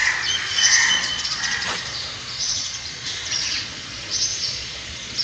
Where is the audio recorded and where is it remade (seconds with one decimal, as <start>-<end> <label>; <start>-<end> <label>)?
0.0-5.2 remade